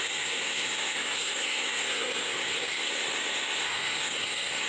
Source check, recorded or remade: remade